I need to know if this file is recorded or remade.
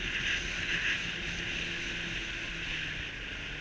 recorded